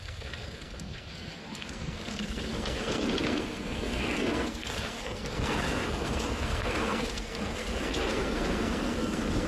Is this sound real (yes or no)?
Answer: no